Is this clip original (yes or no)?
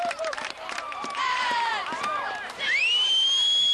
no